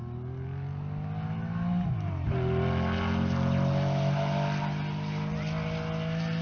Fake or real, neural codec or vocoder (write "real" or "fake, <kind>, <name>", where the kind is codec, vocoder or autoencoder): real